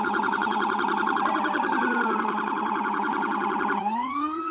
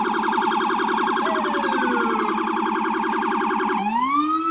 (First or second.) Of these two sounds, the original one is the second